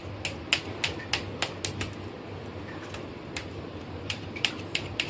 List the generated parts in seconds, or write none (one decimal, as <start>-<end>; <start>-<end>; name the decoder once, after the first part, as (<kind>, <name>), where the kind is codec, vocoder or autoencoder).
3.1-5.1 (vocoder, BigVGAN v2)